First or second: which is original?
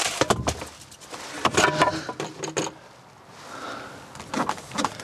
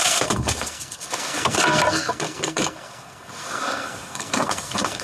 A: first